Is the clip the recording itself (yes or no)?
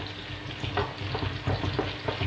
yes